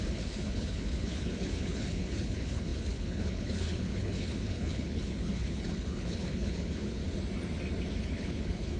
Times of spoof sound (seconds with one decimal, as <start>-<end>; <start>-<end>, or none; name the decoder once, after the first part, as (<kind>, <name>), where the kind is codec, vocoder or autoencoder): 0.0-7.0 (codec, HILCodec); 8.0-8.8

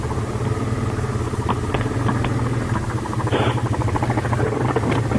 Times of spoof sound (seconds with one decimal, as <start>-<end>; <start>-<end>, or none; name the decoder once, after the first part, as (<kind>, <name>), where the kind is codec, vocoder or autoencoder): none

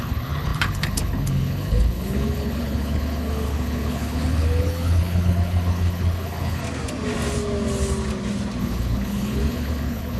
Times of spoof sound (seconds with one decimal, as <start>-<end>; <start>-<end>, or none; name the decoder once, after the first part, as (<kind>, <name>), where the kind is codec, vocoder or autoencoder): 0.0-6.6 (codec, HILCodec); 8.6-10.2

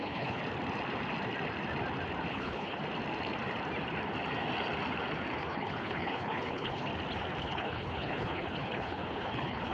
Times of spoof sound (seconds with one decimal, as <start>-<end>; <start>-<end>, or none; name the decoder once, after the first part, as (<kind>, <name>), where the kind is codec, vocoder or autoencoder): 0.0-0.4 (codec, HILCodec); 2.3-2.8; 5.4-6.9; 7.4-9.7

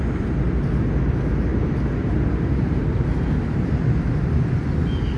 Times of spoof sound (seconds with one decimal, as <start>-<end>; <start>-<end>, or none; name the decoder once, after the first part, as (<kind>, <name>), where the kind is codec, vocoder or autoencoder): none

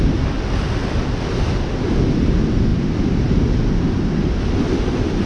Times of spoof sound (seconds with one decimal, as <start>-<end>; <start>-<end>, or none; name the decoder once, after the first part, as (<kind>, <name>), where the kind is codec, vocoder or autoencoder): none